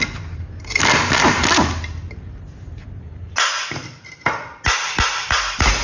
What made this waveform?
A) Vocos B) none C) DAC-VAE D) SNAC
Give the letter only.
B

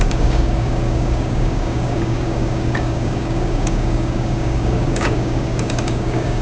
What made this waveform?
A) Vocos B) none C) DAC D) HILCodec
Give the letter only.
C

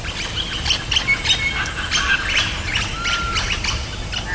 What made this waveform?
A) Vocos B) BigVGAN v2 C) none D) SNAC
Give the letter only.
C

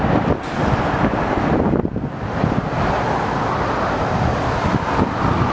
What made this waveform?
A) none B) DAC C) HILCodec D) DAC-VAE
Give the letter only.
A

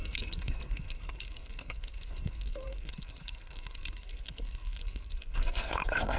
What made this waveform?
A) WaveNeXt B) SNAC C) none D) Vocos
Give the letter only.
B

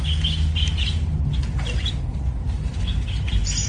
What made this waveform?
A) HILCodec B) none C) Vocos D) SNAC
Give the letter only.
B